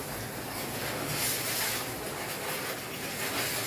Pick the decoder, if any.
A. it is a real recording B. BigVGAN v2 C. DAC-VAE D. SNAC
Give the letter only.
A